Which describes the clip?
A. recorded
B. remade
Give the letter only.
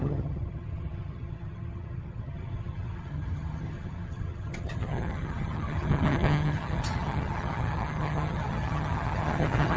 B